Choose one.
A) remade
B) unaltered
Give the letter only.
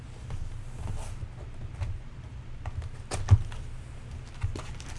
B